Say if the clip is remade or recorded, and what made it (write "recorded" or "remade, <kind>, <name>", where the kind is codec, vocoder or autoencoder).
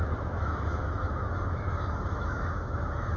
remade, autoencoder, DAC-VAE